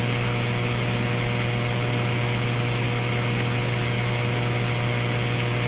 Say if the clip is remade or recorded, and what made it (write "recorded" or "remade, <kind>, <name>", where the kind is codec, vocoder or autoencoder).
recorded